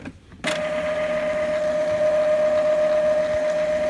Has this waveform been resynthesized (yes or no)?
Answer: no